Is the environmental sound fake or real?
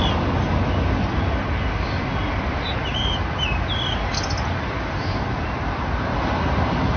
real